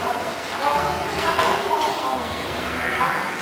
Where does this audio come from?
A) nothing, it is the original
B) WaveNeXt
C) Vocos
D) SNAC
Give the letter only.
D